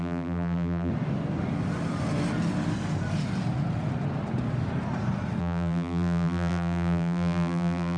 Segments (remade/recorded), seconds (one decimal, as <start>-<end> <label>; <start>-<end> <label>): 0.0-0.9 remade; 0.9-5.4 recorded; 5.4-8.0 remade